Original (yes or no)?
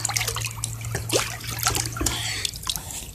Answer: yes